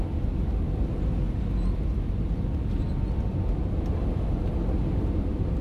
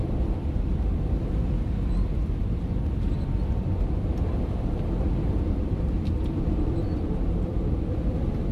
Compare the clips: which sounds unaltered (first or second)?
first